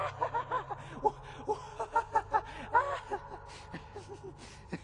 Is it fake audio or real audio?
real